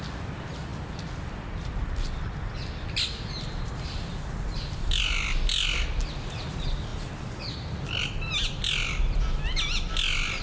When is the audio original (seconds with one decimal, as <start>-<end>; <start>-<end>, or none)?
0.0-10.4